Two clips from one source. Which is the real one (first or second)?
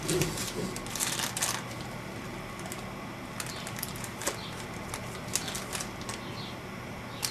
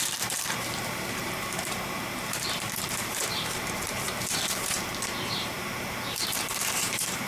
first